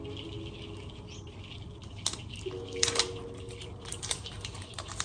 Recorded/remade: recorded